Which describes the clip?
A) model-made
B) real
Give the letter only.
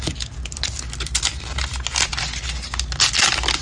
B